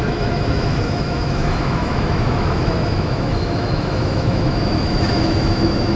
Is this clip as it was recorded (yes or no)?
no